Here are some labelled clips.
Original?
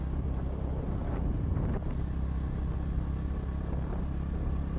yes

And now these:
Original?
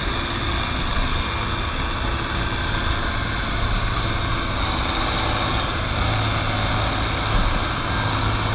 yes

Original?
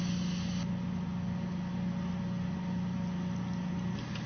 yes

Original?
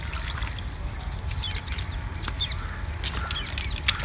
yes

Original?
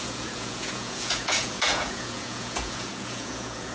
no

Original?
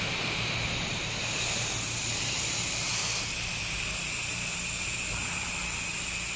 yes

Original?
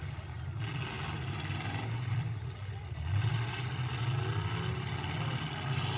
yes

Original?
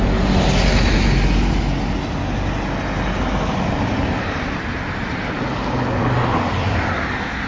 yes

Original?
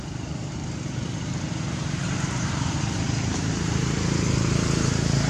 no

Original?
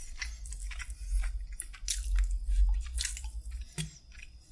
yes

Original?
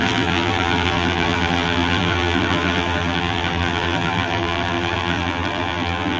no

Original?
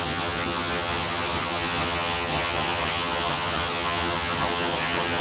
no